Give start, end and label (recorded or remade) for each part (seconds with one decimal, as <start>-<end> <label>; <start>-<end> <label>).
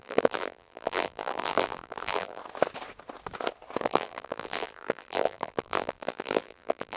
0.0-2.4 remade; 2.4-3.8 recorded; 3.8-7.0 remade